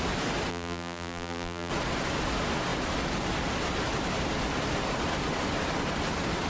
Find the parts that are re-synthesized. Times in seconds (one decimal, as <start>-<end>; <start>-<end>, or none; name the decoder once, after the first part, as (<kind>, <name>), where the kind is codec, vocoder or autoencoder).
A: 0.5-1.7 (vocoder, BigVGAN v2)